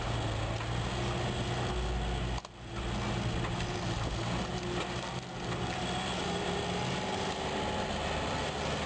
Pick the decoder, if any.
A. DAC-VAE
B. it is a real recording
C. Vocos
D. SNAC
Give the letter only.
B